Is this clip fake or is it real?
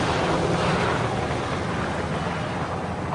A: real